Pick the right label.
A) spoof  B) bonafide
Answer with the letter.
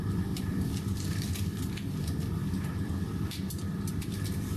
A